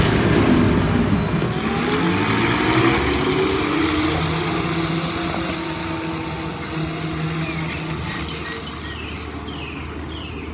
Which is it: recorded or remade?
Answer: recorded